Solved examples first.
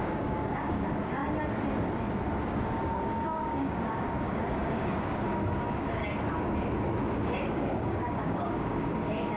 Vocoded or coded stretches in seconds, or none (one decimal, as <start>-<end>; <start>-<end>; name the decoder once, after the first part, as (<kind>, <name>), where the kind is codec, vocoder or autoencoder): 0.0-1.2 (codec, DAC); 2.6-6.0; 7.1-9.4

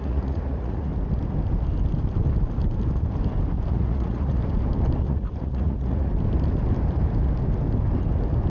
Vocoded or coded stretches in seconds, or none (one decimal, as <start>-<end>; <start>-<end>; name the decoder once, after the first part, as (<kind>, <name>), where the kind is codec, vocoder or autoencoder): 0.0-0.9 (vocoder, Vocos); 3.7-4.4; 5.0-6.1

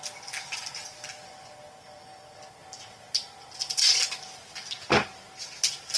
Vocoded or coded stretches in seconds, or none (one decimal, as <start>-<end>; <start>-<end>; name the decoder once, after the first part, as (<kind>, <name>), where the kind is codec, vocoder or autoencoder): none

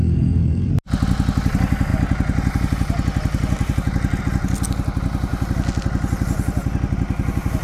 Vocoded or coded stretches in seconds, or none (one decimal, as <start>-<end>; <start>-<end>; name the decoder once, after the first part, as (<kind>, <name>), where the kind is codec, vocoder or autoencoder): 0.0-0.7 (codec, SNAC)

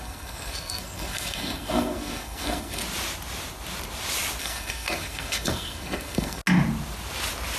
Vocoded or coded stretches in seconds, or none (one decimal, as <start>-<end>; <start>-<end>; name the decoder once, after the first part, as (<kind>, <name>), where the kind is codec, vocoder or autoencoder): 0.0-2.8 (codec, SNAC); 4.4-6.4

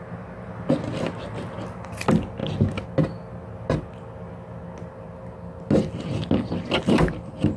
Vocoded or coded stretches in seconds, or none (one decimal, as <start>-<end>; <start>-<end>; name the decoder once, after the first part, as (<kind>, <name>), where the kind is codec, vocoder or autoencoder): none

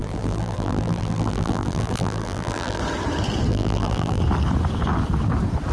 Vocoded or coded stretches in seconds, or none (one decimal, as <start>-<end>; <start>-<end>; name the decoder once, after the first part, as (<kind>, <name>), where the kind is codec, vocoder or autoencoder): 0.0-2.8 (vocoder, BigVGAN v2); 3.5-4.2

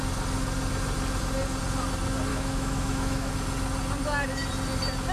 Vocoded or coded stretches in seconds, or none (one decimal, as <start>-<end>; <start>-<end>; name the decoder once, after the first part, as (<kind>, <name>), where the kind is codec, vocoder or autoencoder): 2.3-3.3 (autoencoder, DAC-VAE)